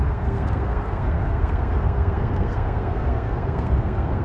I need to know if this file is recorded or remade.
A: remade